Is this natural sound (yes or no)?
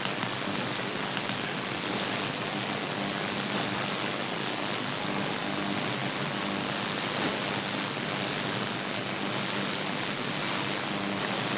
yes